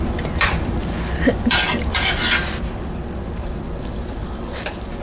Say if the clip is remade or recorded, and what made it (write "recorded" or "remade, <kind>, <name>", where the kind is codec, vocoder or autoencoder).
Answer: remade, vocoder, BigVGAN v2